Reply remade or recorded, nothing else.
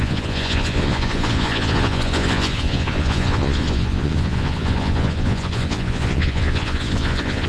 remade